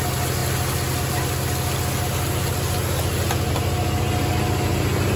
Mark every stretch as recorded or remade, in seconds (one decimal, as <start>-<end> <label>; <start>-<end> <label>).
0.0-5.2 recorded